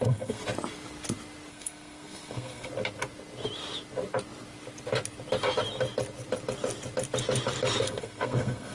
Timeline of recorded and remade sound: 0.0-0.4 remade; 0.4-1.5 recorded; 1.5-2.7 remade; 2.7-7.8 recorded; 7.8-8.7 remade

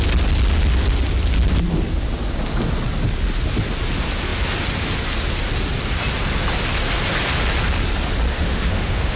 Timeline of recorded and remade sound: 0.0-8.3 recorded; 8.3-9.2 remade

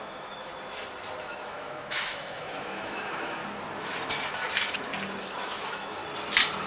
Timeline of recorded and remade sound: 0.0-0.5 remade; 0.5-1.2 recorded; 1.2-3.4 remade; 3.4-5.2 recorded; 5.2-6.0 remade; 6.0-6.7 recorded

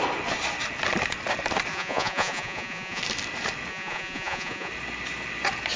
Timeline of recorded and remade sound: 0.0-1.7 recorded; 1.7-3.0 remade; 3.0-3.7 recorded; 3.7-4.7 remade; 4.7-5.8 recorded

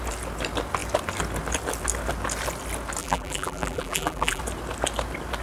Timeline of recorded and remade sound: 0.0-3.0 recorded; 3.0-4.4 remade; 4.4-5.4 recorded

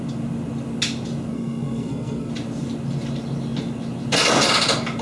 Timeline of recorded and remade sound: 0.0-1.3 recorded; 1.3-2.3 remade; 2.3-5.0 recorded